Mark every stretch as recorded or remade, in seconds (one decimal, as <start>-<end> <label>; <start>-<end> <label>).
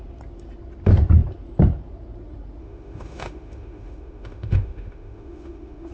0.0-2.6 recorded; 2.6-5.9 remade